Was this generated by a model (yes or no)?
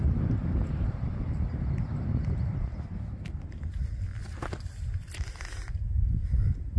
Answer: no